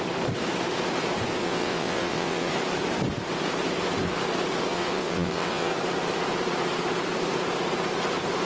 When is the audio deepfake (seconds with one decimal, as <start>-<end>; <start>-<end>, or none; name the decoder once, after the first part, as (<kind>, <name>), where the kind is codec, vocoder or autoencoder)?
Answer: 1.4-2.5 (vocoder, WaveNeXt); 4.7-5.7

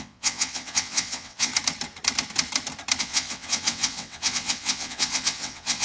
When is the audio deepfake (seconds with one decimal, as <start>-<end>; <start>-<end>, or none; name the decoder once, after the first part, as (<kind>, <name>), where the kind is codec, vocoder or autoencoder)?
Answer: 0.0-1.5 (vocoder, WaveNeXt); 3.0-5.8